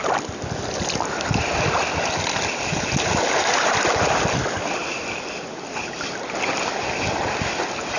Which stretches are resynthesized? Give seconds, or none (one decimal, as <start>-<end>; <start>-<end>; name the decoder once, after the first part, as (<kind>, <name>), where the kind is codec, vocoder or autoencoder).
none